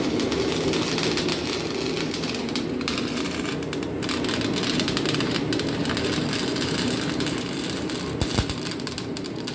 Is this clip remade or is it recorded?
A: recorded